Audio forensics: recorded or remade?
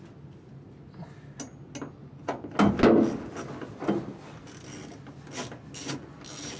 recorded